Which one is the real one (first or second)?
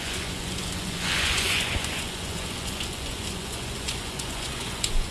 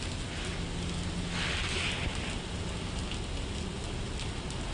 second